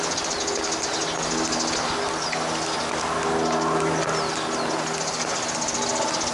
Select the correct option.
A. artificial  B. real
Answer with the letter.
B